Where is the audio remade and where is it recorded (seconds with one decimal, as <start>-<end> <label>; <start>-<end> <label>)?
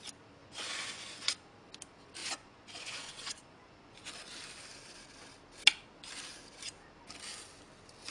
0.0-0.4 recorded; 0.4-1.3 remade; 1.3-2.2 recorded; 2.2-4.1 remade; 4.1-8.1 recorded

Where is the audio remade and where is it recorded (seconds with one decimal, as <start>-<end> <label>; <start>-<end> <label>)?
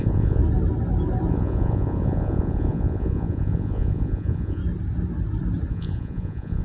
0.0-0.4 remade; 0.4-1.3 recorded; 1.3-4.6 remade; 4.6-5.7 recorded; 5.7-6.6 remade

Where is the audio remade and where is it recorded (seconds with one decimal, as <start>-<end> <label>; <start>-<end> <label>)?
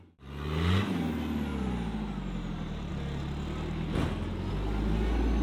0.0-5.4 recorded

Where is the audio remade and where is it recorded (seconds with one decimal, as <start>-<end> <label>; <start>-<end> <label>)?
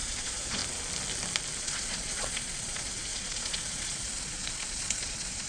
0.0-0.6 remade; 0.6-1.6 recorded; 1.6-5.5 remade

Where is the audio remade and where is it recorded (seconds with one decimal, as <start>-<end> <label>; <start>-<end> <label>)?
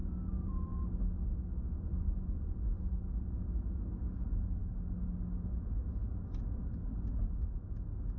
0.0-0.8 remade; 0.8-1.7 recorded; 1.7-2.6 remade; 2.6-8.2 recorded